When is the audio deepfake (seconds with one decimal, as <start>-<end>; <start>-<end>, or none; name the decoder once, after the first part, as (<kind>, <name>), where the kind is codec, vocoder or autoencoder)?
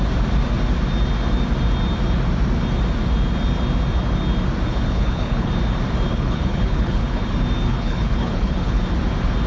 4.7-5.5 (codec, HILCodec); 6.1-7.3; 7.7-8.8